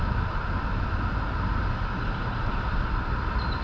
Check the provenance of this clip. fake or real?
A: real